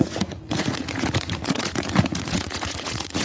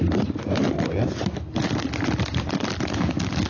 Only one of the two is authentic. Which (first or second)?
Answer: second